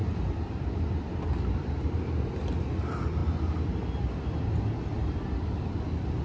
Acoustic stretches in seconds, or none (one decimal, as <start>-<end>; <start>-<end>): 1.1-6.2

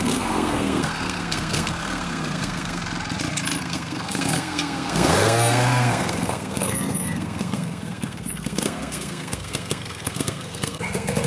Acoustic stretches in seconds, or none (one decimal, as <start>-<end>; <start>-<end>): 2.8-3.6